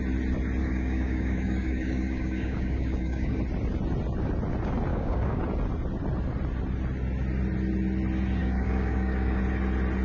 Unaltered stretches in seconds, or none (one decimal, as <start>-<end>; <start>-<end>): 0.0-0.6; 3.4-4.9; 5.4-8.4; 9.4-10.0